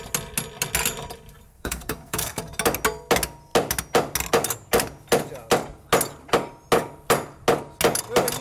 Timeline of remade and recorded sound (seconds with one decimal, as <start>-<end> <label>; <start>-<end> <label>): 0.0-1.5 recorded; 1.5-2.4 remade; 2.4-8.4 recorded